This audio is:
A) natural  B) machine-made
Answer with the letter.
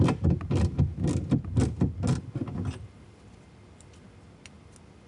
A